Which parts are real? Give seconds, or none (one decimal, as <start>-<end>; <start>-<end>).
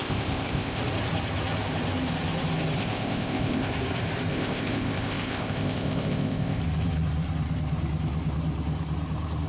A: 0.8-2.8; 3.7-4.3; 6.6-9.5